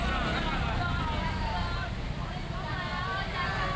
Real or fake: real